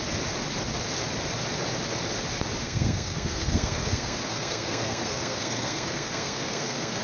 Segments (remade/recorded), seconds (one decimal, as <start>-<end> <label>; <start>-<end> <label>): 0.0-2.6 recorded; 2.6-7.0 remade